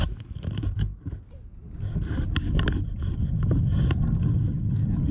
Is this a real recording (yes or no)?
yes